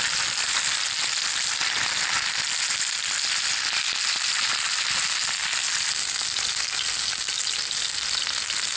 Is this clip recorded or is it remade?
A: recorded